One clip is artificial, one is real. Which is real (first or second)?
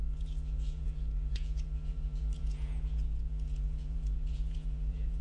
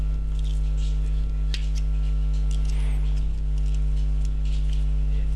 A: second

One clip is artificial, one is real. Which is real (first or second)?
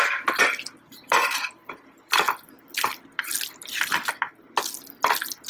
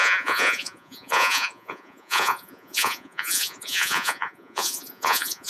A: first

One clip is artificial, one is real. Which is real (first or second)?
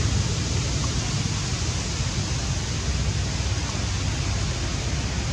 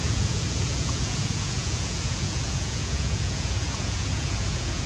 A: first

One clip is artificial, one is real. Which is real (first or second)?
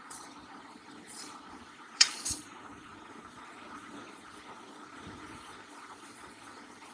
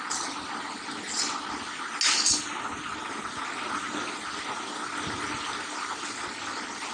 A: second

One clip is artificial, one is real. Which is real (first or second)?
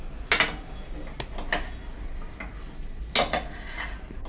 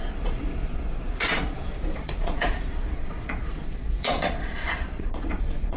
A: first